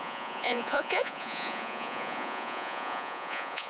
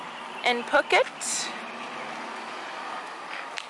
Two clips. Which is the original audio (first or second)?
second